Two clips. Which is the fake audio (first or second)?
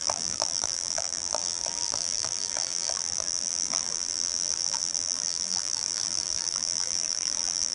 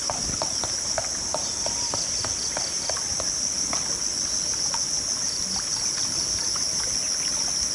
first